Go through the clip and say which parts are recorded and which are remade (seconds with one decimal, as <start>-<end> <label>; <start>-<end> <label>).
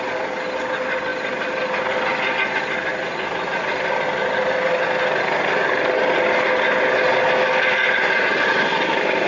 0.0-9.3 recorded